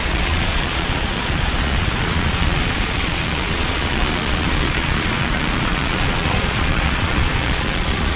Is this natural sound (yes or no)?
no